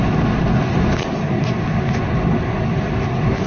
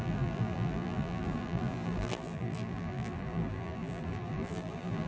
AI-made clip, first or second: second